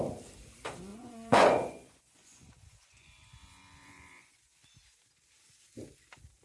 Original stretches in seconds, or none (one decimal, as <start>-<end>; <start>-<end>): 0.0-0.9; 4.7-6.4